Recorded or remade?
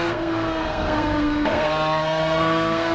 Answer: remade